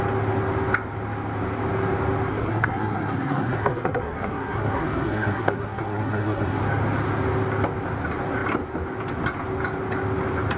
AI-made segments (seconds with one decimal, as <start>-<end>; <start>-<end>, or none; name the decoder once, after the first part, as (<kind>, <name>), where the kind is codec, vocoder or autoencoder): 2.3-6.6 (codec, SNAC)